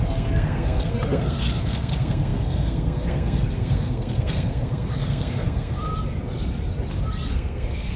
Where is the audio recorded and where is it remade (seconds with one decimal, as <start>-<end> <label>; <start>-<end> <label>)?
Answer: 0.0-5.9 remade; 5.9-7.3 recorded; 7.3-8.0 remade